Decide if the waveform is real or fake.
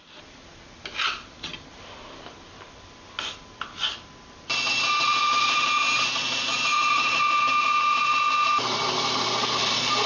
real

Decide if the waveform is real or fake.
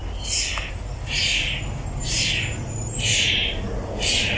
real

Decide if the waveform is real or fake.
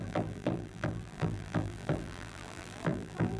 fake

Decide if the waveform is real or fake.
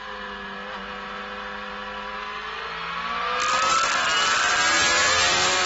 real